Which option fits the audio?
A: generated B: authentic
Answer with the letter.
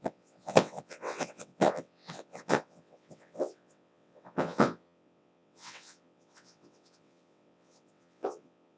A